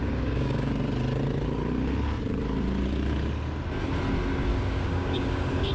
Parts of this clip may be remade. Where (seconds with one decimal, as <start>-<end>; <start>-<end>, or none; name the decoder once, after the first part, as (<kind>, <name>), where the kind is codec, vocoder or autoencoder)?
0.0-0.7 (codec, DAC); 4.5-5.7